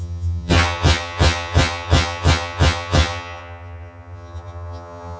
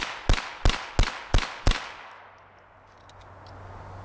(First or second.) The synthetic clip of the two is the first